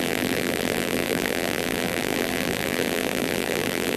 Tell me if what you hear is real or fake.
fake